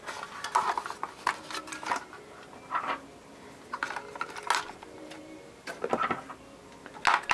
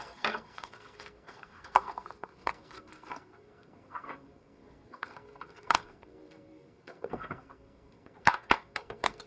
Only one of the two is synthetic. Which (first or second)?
second